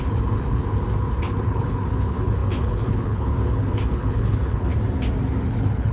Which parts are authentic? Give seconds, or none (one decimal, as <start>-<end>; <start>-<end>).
0.6-1.2; 4.7-5.4